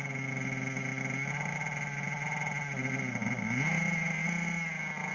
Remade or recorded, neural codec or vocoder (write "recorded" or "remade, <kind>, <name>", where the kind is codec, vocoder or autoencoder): recorded